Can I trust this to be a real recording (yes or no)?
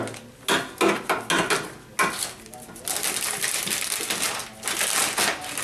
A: yes